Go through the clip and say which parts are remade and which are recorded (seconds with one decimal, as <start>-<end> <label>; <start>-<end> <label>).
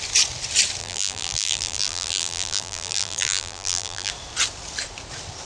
0.0-0.8 recorded; 0.8-4.1 remade; 4.1-5.5 recorded